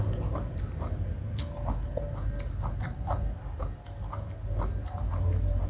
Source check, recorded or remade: recorded